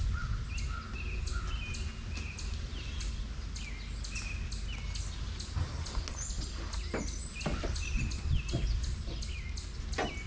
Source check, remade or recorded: recorded